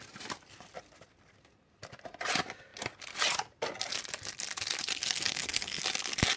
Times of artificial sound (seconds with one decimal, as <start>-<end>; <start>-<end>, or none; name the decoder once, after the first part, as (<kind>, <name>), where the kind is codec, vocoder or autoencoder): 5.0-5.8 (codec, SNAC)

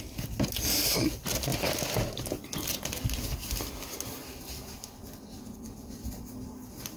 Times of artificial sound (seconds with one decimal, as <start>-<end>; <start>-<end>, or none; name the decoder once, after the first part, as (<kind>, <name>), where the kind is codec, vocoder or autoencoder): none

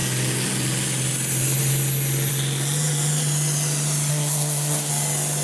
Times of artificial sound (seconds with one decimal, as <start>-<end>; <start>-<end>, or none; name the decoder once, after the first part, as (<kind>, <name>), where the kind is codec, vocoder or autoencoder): 4.1-4.9 (codec, SNAC)